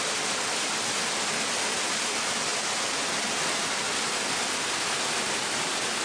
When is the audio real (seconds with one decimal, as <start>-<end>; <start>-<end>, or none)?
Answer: 0.0-6.0